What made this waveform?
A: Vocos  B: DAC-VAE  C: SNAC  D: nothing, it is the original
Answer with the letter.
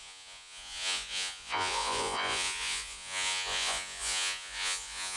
A